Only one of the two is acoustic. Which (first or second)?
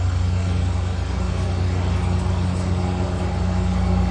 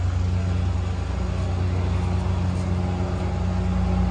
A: second